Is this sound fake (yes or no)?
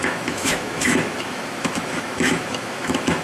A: yes